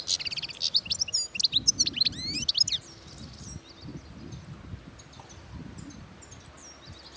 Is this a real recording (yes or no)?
yes